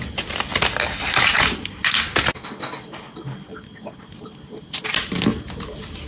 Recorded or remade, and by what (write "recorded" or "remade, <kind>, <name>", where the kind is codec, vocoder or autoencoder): recorded